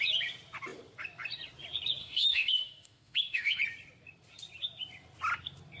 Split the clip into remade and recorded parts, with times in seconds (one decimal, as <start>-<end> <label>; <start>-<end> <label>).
0.0-2.0 recorded; 2.0-3.6 remade; 3.6-5.8 recorded